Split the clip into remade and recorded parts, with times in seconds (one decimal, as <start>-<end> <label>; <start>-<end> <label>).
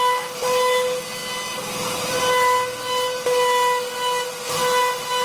0.0-5.2 recorded